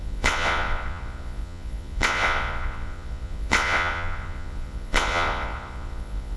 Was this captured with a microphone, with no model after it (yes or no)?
no